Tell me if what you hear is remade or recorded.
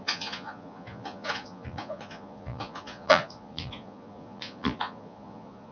remade